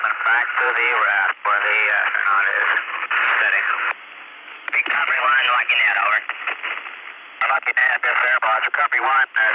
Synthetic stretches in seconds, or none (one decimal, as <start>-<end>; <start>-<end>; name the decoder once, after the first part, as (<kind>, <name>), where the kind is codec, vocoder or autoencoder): 4.3-5.2 (codec, DAC)